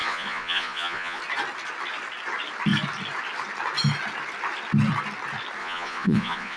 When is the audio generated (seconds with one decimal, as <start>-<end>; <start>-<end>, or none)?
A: 0.0-1.2; 5.6-6.6